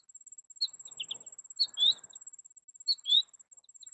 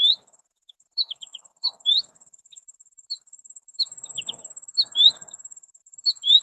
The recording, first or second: first